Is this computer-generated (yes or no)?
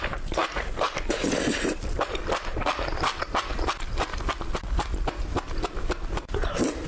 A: yes